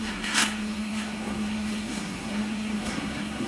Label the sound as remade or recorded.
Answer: remade